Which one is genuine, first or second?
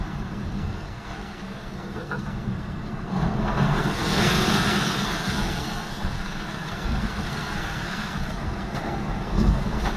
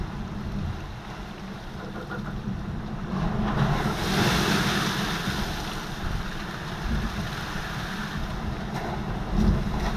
second